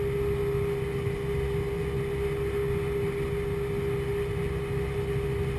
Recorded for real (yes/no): yes